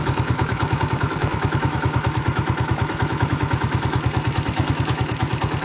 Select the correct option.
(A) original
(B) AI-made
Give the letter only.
B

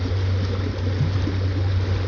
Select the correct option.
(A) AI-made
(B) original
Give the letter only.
B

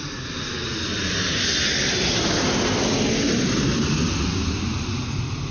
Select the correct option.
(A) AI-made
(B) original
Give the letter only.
B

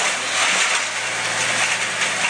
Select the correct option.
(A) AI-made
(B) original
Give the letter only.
B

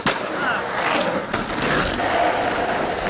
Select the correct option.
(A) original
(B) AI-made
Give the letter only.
A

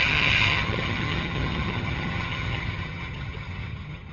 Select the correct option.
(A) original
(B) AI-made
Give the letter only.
B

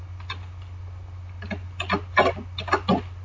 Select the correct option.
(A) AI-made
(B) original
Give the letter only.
B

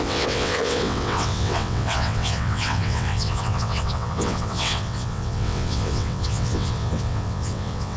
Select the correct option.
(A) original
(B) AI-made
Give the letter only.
B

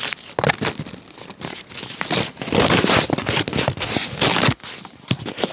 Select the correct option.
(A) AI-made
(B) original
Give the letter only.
B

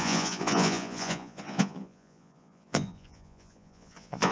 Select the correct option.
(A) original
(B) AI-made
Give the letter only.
B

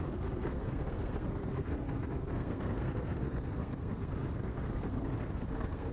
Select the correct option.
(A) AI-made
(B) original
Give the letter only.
A